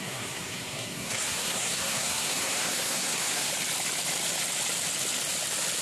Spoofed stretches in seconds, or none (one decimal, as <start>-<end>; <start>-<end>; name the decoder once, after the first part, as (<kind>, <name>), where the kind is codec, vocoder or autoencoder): 0.0-3.5 (codec, SNAC)